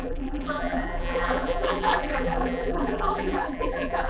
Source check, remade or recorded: remade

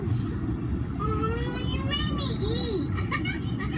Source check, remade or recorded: remade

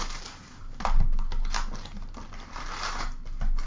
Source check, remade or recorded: recorded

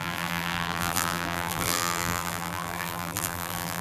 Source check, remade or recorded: remade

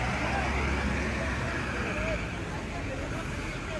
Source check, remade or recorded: recorded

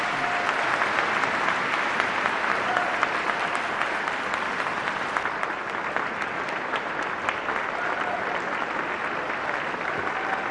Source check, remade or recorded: recorded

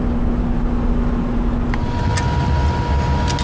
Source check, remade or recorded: recorded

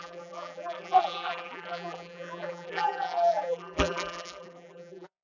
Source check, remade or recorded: remade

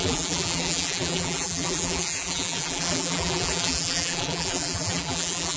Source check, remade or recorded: remade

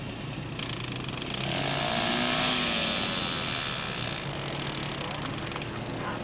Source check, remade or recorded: recorded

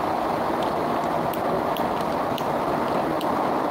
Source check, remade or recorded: recorded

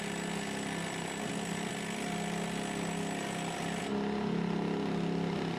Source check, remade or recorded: recorded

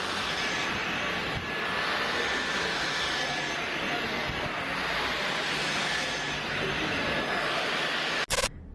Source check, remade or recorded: recorded